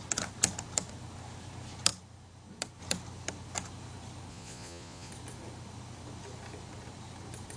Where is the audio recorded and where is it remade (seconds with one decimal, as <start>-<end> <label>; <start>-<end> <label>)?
0.0-4.3 recorded; 4.3-5.1 remade; 5.1-7.6 recorded

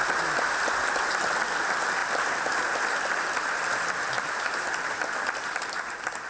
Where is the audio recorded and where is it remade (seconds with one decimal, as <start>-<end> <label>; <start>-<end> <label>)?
0.0-6.3 recorded

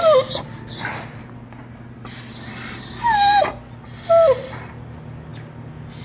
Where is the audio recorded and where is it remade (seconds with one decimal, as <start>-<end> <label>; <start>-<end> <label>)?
0.0-6.0 recorded

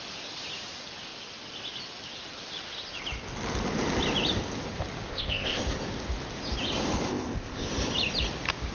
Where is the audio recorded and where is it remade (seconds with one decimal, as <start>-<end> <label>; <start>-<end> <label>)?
0.0-5.1 recorded; 5.1-5.6 remade; 5.6-7.1 recorded; 7.1-7.7 remade; 7.7-8.7 recorded

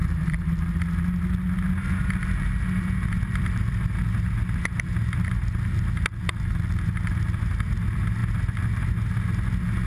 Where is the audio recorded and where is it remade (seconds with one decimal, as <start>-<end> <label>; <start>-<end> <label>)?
0.0-0.5 remade; 0.5-9.9 recorded

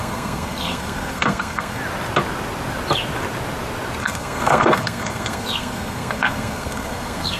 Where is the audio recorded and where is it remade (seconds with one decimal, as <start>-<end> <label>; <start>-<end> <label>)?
0.0-1.8 remade; 1.8-4.0 recorded; 4.0-7.4 remade

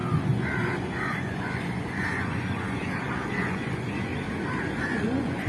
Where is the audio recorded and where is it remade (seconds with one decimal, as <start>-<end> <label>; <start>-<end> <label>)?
0.0-4.1 remade; 4.1-4.8 recorded; 4.8-5.5 remade